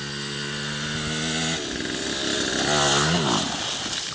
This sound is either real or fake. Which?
real